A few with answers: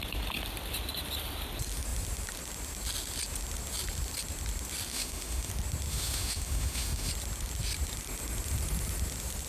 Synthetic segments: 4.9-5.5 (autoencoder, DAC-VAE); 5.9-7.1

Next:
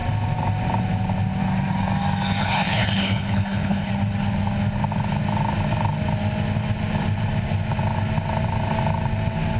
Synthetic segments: 2.4-3.9 (codec, HILCodec)

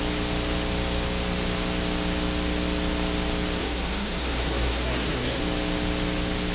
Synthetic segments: 3.6-5.4 (codec, SNAC)

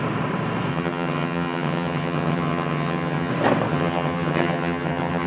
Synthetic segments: 0.7-3.3 (vocoder, HiFi-GAN); 3.7-5.3